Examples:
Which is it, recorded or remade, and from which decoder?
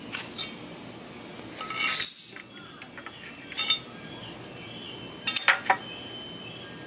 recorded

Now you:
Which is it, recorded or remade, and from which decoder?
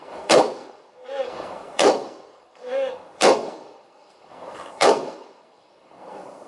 remade, codec, SNAC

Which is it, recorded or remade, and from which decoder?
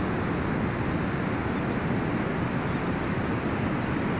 recorded